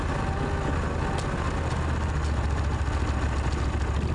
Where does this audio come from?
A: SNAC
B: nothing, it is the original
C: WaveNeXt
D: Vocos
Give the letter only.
B